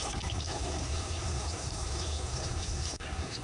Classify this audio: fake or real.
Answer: fake